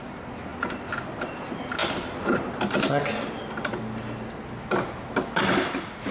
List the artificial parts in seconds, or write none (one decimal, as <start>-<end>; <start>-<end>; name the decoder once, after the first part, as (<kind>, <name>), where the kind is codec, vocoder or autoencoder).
none